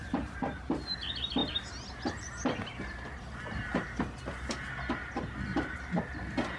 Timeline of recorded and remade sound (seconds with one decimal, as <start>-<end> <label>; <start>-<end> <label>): 0.0-0.6 remade; 0.6-1.4 recorded; 1.4-4.5 remade; 4.5-5.5 recorded; 5.5-6.0 remade; 6.0-6.6 recorded